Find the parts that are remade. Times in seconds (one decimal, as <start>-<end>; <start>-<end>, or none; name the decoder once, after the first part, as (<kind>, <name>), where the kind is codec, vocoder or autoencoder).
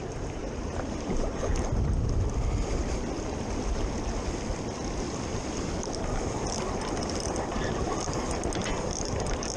0.4-1.4 (vocoder, BigVGAN v2)